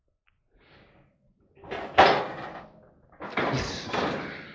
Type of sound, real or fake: real